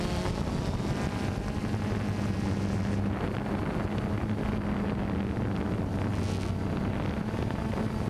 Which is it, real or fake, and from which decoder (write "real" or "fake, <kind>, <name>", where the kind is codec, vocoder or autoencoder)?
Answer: real